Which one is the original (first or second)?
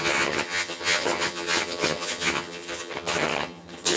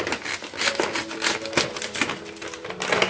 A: second